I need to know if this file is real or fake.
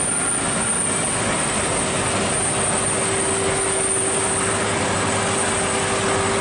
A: real